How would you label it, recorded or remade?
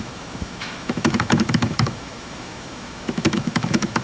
remade